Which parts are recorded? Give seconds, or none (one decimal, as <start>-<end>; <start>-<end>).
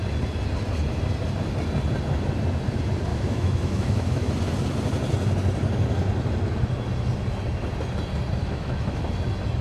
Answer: 0.0-3.1; 4.3-8.4; 9.0-9.6